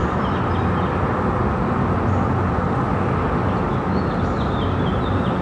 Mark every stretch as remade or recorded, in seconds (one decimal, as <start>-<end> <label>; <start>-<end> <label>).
0.0-5.4 recorded